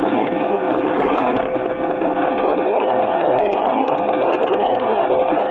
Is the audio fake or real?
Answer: fake